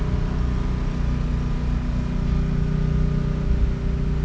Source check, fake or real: real